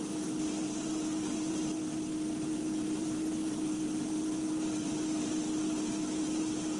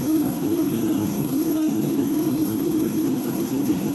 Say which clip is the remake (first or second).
second